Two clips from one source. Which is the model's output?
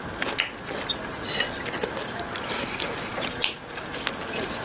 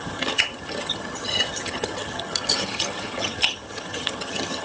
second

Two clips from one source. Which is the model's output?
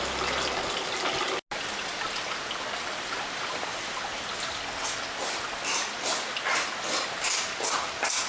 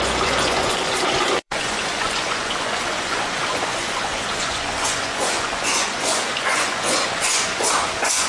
second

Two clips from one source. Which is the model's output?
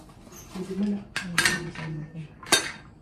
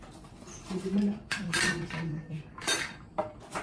second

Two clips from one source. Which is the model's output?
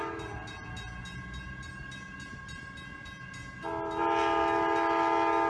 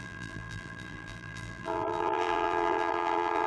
second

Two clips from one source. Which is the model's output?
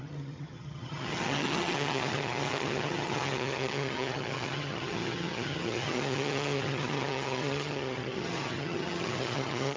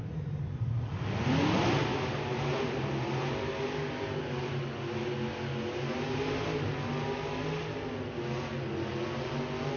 first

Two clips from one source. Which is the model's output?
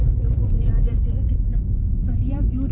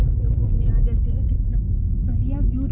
first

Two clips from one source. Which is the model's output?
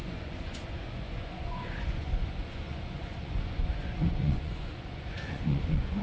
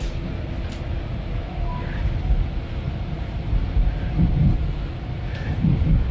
first